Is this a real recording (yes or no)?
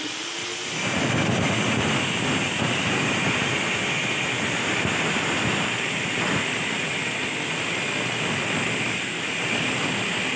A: yes